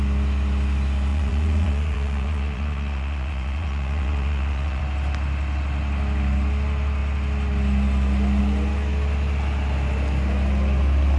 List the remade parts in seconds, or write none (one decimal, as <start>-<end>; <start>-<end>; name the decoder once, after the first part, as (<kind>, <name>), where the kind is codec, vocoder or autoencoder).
1.1-4.8 (vocoder, Vocos)